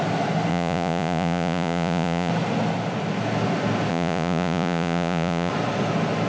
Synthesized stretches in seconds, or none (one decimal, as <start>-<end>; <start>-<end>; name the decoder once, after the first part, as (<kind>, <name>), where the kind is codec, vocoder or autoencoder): 0.5-2.3 (vocoder, Vocos); 3.9-5.5